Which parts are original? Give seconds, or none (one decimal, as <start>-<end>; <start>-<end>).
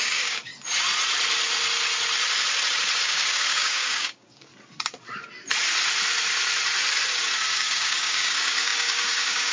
0.5-3.0; 4.5-7.5